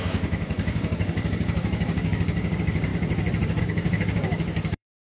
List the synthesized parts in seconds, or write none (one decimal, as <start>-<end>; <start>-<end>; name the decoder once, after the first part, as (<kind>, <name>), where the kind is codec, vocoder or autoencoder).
0.0-2.9 (codec, DAC); 3.6-5.1